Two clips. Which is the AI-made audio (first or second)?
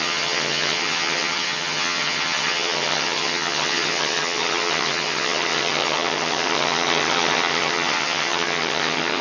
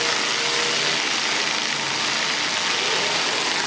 first